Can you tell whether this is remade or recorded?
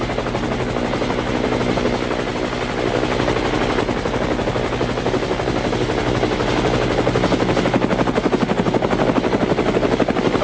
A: recorded